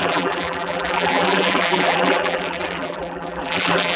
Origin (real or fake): fake